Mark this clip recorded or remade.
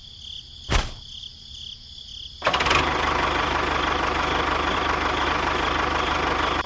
recorded